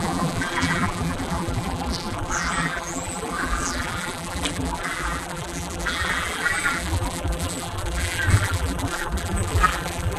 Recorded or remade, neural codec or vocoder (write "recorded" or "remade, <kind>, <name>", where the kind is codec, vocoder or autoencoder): remade, vocoder, BigVGAN v2